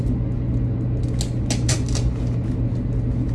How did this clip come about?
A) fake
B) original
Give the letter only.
B